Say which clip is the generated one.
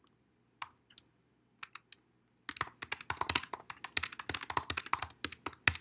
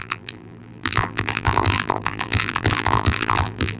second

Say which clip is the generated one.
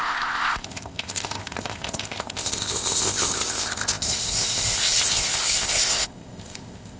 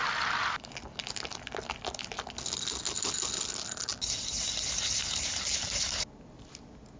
first